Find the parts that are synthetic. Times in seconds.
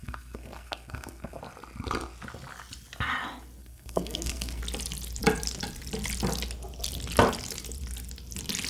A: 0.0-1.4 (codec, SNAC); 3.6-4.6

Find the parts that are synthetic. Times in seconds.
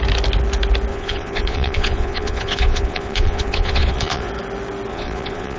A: 0.9-4.3 (vocoder, Vocos); 4.9-5.6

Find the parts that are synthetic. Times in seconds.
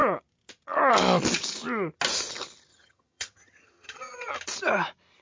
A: 2.7-4.3 (vocoder, HiFi-GAN)